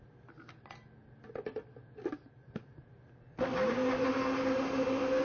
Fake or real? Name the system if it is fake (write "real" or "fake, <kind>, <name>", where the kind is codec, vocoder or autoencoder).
real